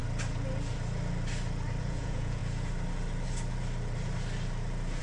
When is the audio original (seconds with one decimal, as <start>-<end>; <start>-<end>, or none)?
0.0-1.8; 2.4-5.0